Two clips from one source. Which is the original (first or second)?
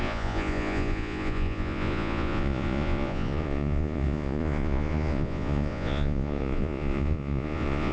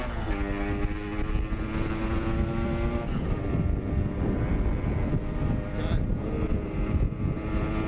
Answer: second